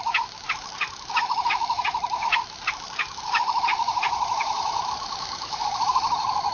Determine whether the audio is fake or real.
fake